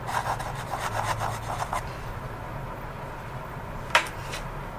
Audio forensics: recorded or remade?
recorded